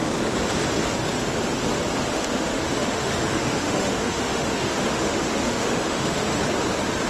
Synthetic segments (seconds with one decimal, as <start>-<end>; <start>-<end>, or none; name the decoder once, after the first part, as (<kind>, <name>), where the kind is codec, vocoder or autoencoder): 2.1-6.4 (autoencoder, DAC-VAE)